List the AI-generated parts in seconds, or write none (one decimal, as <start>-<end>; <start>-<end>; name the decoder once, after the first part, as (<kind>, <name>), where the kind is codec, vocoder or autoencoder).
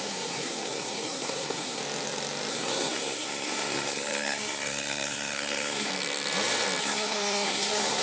0.0-1.8 (codec, SNAC); 2.5-5.9; 6.8-8.0